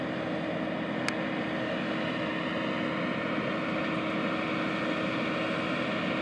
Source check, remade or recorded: recorded